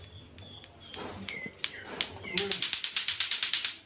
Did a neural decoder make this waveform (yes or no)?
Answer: no